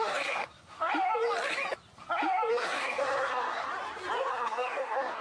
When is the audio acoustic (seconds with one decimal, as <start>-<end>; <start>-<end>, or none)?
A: 0.9-2.5; 3.7-4.3